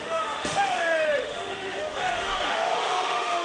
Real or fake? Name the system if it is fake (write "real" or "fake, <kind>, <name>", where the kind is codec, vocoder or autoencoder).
fake, autoencoder, DAC-VAE